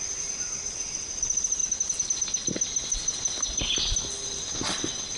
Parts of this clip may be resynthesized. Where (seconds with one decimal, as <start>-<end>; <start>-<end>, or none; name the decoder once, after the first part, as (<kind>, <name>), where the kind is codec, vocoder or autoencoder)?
none